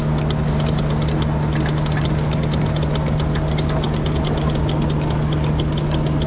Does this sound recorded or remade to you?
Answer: recorded